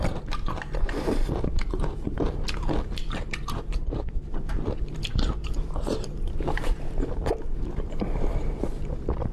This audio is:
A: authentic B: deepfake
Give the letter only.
B